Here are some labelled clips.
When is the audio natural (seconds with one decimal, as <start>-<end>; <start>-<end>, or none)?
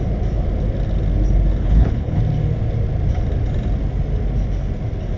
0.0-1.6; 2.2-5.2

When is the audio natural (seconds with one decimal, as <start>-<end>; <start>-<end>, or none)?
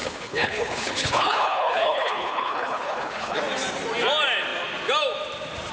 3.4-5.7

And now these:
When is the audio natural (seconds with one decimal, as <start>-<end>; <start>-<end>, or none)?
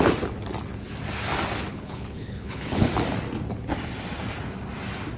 0.0-1.7; 2.9-5.2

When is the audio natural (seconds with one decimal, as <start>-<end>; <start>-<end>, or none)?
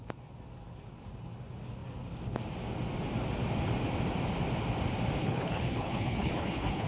0.0-5.2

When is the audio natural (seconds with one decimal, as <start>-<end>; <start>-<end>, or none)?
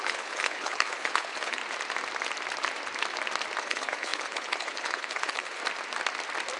1.6-3.6; 5.6-6.6